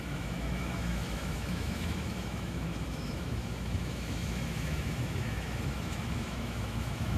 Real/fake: fake